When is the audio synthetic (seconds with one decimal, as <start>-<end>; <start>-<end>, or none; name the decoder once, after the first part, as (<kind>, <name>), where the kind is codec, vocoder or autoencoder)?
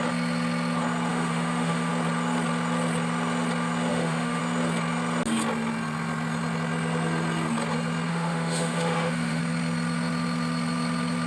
1.1-1.9 (autoencoder, DAC-VAE); 3.9-4.4; 8.1-9.4